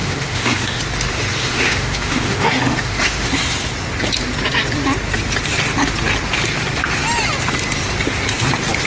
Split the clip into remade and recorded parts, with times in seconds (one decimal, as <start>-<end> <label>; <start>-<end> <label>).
0.0-0.8 remade; 0.8-1.4 recorded; 1.4-3.3 remade; 3.3-8.9 recorded